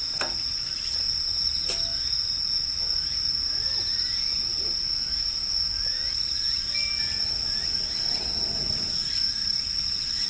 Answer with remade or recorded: recorded